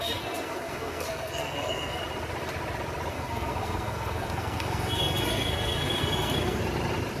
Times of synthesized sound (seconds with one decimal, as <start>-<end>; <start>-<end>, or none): 0.0-2.0; 3.1-6.6